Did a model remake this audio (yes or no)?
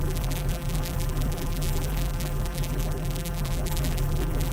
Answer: yes